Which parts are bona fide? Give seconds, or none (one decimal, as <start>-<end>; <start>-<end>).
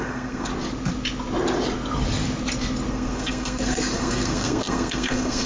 0.5-2.9